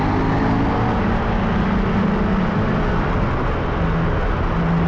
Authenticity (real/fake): real